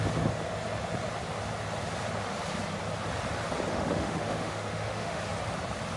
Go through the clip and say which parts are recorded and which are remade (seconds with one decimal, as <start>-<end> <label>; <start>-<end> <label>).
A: 0.0-3.7 recorded; 3.7-5.2 remade; 5.2-6.0 recorded